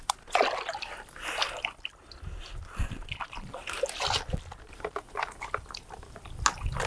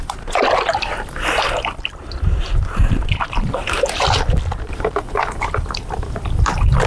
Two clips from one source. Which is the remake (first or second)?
second